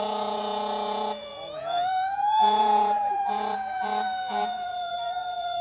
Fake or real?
fake